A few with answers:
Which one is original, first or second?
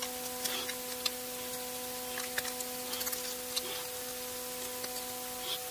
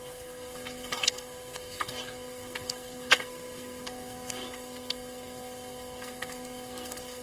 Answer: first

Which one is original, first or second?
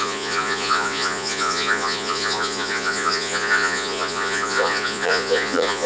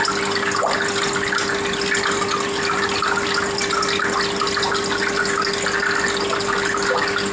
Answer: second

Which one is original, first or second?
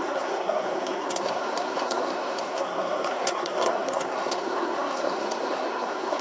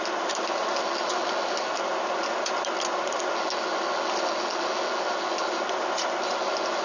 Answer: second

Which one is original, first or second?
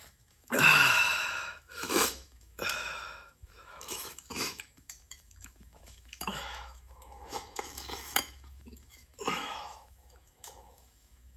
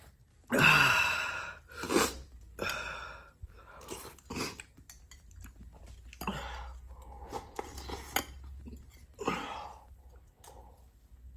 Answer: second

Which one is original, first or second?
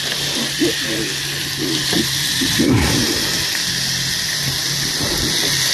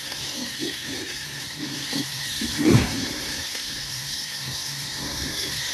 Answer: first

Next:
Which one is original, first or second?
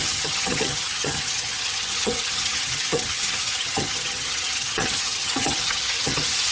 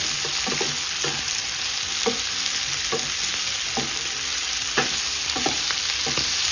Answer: second